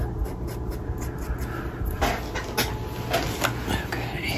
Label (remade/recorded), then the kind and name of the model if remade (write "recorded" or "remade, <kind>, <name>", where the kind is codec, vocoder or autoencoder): recorded